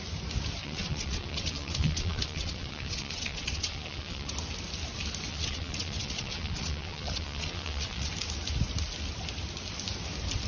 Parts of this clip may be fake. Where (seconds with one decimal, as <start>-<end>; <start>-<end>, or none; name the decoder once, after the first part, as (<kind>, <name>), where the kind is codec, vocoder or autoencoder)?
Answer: 0.6-4.3 (vocoder, WaveNeXt); 5.3-8.1